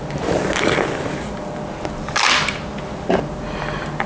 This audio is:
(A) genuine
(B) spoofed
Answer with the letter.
A